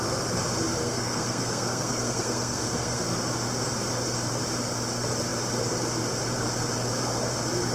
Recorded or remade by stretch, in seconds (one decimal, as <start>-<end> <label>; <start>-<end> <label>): 0.0-0.8 recorded; 0.8-3.0 remade; 3.0-7.7 recorded